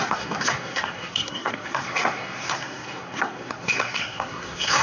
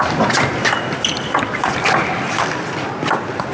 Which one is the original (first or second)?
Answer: second